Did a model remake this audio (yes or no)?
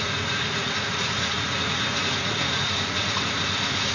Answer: yes